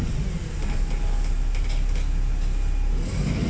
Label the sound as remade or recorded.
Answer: recorded